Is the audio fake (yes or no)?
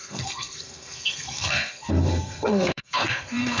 yes